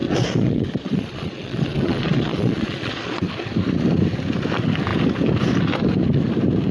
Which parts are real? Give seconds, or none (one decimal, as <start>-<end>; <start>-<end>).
3.3-6.7